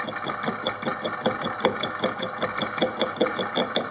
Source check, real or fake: real